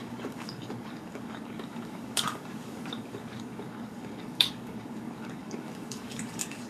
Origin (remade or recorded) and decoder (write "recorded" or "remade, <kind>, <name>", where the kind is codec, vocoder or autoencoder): remade, codec, DAC